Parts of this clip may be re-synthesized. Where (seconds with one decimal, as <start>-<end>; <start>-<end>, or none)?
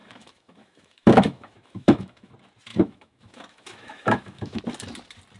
0.0-2.3; 2.7-4.6